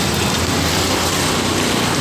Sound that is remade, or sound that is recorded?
recorded